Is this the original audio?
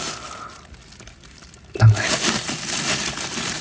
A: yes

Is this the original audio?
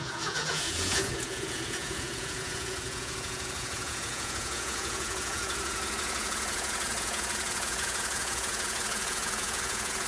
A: no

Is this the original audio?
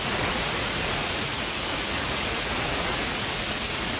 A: no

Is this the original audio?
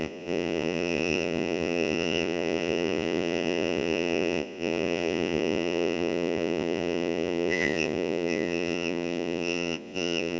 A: no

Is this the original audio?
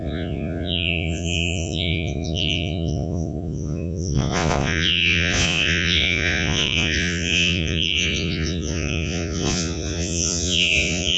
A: no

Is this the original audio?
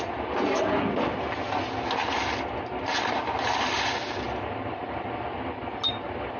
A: yes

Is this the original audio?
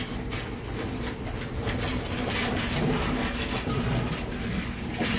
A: yes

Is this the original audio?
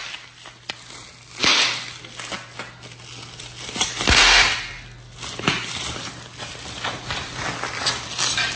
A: yes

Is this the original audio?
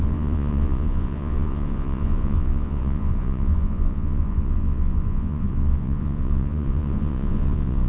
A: no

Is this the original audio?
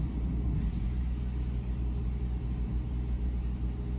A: yes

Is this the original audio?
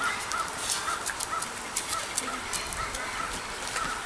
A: yes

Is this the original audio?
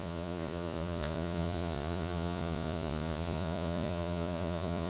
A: no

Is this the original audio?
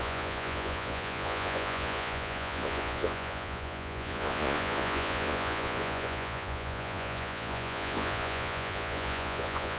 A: no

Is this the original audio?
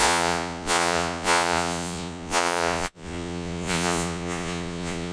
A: no